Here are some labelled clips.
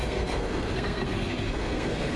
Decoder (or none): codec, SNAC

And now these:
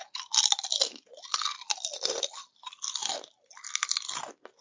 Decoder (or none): none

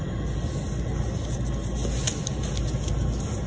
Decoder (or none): none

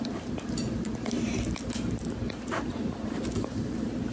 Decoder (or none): none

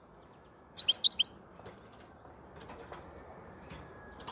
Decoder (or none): none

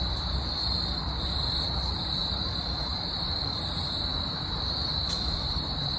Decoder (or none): vocoder, BigVGAN v2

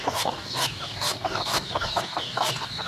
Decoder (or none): codec, DAC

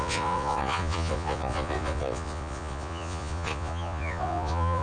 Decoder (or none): vocoder, Vocos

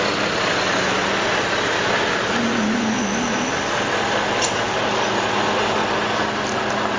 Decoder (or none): none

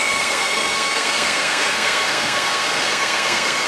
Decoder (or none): codec, SNAC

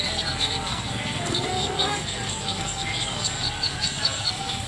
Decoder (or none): codec, SNAC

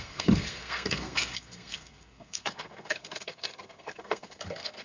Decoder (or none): codec, SNAC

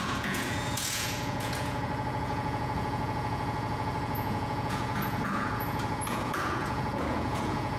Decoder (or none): vocoder, Vocos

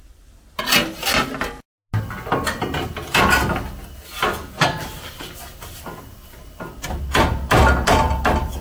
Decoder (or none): none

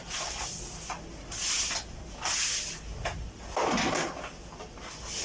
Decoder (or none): none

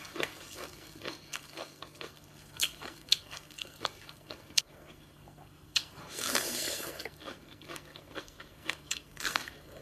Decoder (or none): codec, SNAC